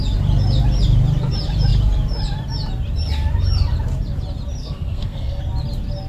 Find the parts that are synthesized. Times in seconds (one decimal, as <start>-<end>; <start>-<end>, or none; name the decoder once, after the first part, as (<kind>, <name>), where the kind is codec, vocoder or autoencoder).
4.6-5.4 (codec, SNAC)

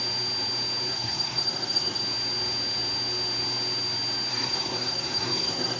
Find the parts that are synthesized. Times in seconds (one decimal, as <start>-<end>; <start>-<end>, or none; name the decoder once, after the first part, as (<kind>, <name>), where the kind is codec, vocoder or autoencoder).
0.9-2.0 (codec, SNAC); 4.3-5.8

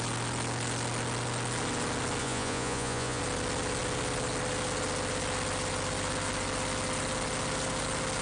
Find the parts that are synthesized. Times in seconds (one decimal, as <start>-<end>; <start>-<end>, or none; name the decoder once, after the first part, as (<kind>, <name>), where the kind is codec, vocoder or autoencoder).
2.2-3.2 (vocoder, Vocos)

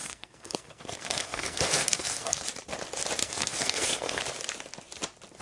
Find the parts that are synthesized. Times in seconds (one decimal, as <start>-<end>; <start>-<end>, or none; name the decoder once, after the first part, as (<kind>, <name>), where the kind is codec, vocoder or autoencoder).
0.0-2.4 (codec, SNAC); 3.2-4.2

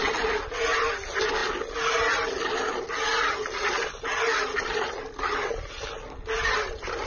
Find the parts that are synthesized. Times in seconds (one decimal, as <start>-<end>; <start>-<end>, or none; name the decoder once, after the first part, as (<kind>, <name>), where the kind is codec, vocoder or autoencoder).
none

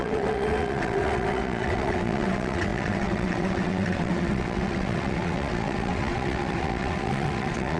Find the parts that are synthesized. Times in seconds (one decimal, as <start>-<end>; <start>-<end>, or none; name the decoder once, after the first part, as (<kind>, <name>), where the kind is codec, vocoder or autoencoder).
0.0-7.8 (vocoder, WaveNeXt)